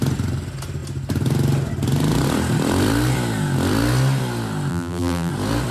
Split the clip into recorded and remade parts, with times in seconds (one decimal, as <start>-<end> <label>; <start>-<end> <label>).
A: 0.0-4.7 recorded; 4.7-5.3 remade; 5.3-5.7 recorded